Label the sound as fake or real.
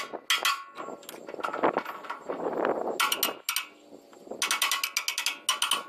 real